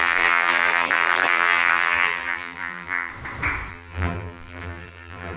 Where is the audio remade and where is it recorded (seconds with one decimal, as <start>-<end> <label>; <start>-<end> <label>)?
0.0-3.1 remade; 3.1-3.7 recorded; 3.7-5.4 remade